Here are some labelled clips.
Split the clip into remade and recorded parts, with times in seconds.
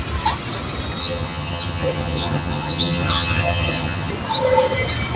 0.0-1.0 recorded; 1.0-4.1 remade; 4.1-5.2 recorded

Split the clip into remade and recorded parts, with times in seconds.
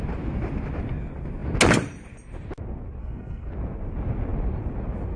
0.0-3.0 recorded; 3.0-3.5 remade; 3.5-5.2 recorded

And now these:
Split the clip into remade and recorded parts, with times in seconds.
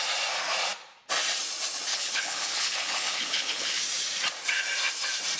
0.0-1.9 recorded; 1.9-3.8 remade; 3.8-5.4 recorded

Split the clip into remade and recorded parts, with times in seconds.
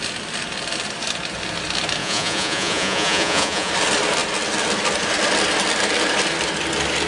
0.0-2.0 recorded; 2.0-3.7 remade; 3.7-7.1 recorded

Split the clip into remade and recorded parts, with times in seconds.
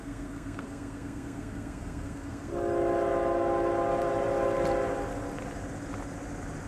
0.0-2.5 remade; 2.5-6.7 recorded